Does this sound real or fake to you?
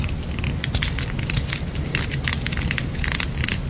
real